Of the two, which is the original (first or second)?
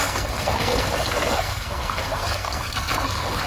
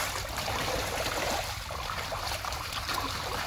second